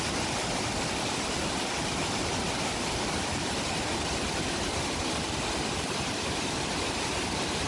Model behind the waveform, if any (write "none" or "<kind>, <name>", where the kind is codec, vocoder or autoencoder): vocoder, BigVGAN v2